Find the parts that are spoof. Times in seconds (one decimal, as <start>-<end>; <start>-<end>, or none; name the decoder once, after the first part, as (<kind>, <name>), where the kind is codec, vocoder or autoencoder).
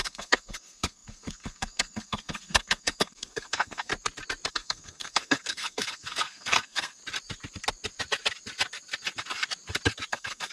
0.0-3.9 (codec, SNAC); 4.5-7.0; 10.1-10.5